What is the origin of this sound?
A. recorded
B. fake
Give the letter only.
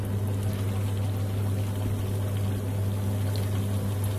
A